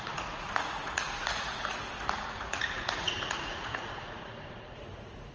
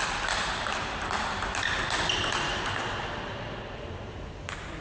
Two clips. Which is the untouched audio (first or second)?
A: second